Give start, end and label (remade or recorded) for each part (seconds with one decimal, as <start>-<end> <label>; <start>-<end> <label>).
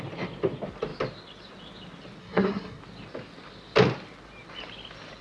0.0-2.2 recorded; 2.2-2.8 remade; 2.8-5.2 recorded